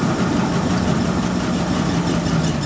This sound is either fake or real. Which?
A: real